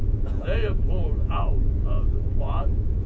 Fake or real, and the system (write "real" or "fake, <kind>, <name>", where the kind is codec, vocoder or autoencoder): fake, vocoder, Vocos